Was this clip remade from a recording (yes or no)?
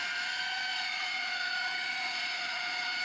yes